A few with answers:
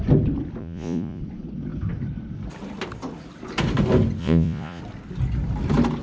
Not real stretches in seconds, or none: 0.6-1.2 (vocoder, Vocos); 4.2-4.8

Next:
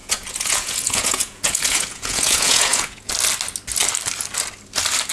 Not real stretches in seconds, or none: 0.0-3.1 (vocoder, Vocos)

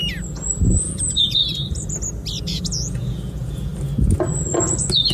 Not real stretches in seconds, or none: 0.7-1.4 (vocoder, Vocos); 2.4-3.7